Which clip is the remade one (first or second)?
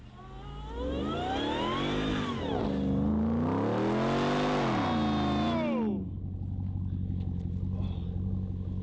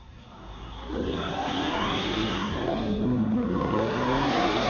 second